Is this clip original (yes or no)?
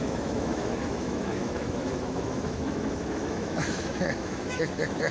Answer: no